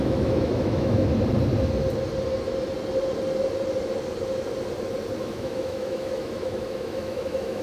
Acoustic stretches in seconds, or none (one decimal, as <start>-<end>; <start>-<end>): 1.1-5.2